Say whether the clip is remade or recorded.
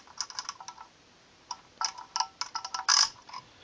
recorded